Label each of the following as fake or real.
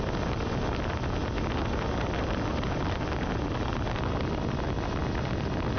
real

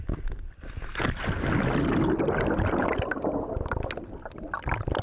real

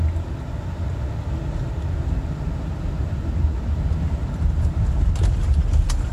real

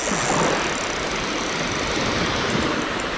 real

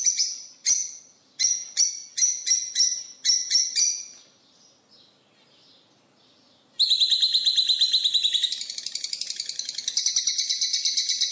real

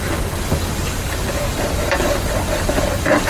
fake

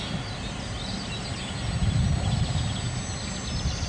real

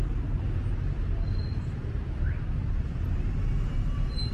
real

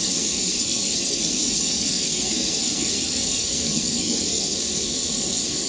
fake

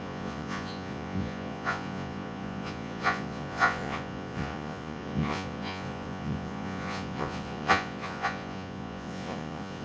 fake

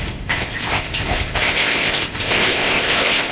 fake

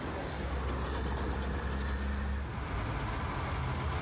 real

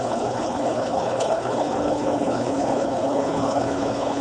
fake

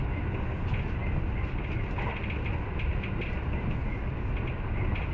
real